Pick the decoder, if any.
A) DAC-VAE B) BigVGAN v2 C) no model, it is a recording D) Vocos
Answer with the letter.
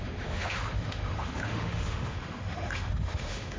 A